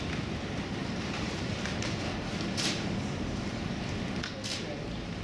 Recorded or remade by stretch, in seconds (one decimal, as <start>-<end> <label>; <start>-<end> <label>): 0.0-0.8 recorded; 0.8-3.9 remade; 3.9-5.2 recorded